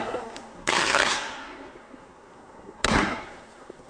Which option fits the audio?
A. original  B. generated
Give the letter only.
B